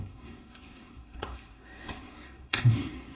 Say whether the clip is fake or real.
fake